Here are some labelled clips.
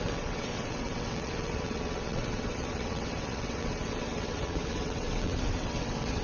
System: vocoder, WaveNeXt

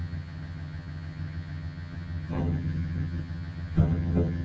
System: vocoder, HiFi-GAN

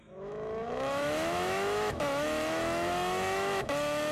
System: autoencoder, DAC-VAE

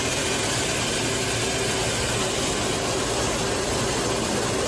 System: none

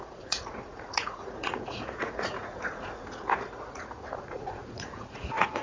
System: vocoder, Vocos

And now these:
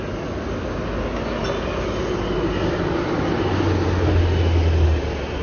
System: none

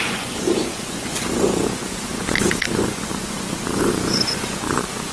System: vocoder, Vocos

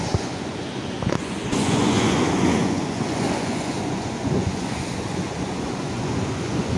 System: vocoder, Vocos